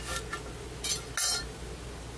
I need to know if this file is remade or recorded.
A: recorded